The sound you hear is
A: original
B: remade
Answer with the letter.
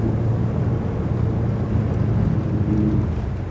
A